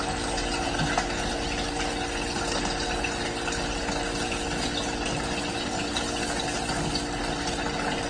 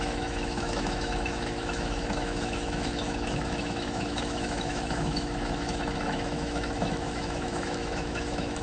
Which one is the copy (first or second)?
second